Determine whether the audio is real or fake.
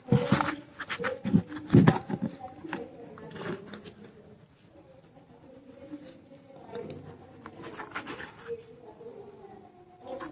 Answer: real